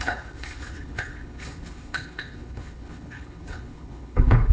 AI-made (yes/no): yes